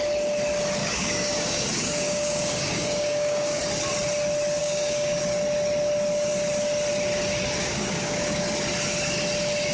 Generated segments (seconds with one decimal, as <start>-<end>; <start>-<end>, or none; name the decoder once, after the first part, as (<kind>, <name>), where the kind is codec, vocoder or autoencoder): 0.8-3.6 (codec, DAC); 4.6-5.2; 7.6-8.4